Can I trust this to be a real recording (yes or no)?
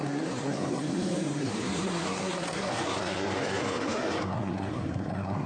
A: no